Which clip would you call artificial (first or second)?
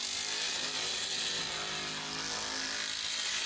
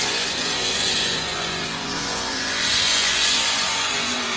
second